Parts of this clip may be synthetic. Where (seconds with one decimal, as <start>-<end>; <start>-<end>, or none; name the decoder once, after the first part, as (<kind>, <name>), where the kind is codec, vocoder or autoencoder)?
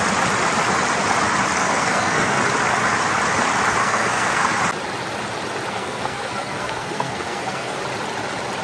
1.6-2.4 (codec, SNAC); 3.8-4.6; 5.7-7.8